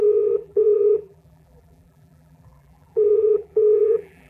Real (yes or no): no